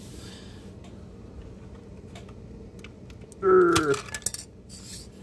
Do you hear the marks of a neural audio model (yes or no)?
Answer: no